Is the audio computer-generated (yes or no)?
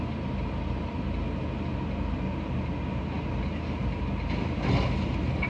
no